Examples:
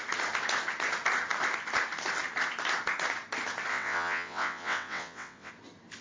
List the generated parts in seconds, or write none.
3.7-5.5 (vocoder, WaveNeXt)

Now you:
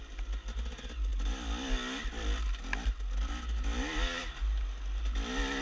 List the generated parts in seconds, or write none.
none

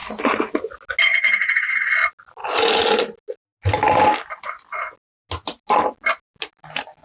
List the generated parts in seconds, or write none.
none